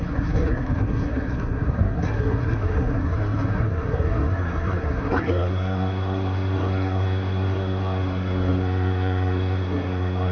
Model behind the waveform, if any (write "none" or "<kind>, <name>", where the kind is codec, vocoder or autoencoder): codec, SNAC